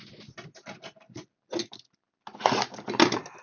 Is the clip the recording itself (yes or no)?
yes